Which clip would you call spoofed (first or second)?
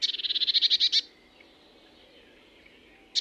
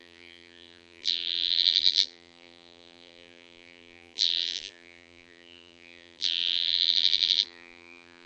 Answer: second